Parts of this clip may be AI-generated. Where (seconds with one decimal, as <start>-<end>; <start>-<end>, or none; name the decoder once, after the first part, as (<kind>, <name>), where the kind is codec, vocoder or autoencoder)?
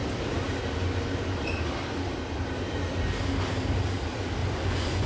4.4-5.1 (vocoder, Vocos)